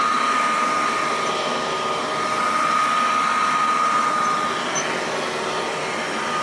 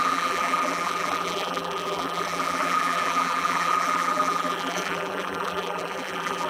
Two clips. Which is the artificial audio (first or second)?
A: second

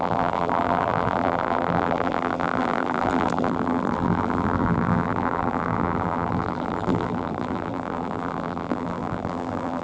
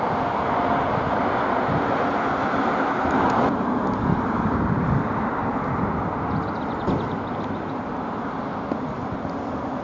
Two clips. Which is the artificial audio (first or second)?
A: first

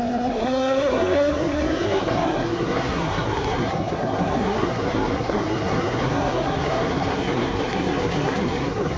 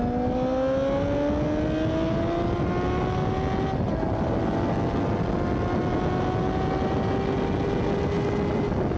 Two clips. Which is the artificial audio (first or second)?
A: first